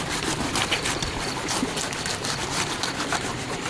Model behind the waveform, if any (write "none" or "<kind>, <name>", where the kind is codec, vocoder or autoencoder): none